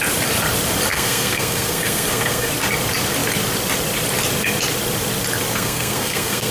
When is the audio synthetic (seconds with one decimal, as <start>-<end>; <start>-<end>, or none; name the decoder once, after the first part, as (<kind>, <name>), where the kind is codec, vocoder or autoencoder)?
0.9-2.5 (codec, SNAC); 5.5-6.5